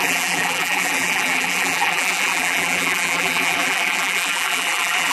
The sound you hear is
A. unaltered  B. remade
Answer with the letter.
B